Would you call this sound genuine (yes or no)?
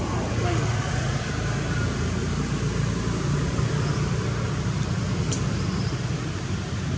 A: yes